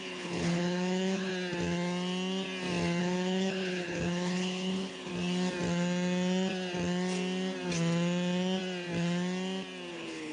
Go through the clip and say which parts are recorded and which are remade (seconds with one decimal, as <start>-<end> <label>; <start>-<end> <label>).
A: 0.0-1.3 remade; 1.3-3.0 recorded; 3.0-5.1 remade; 5.1-9.9 recorded; 9.9-10.3 remade